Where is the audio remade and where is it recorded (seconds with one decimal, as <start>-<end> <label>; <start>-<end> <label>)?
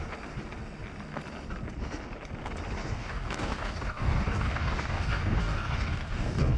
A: 0.0-2.8 recorded; 2.8-6.6 remade